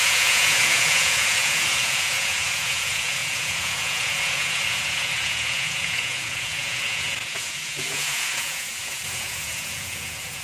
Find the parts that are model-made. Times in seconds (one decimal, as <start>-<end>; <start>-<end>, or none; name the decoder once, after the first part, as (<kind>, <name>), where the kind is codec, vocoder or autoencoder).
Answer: 0.0-10.4 (vocoder, Vocos)